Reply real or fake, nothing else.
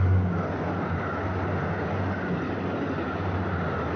real